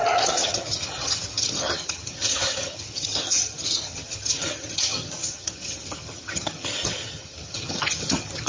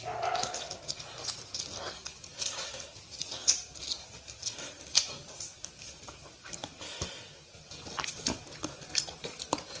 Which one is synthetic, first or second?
first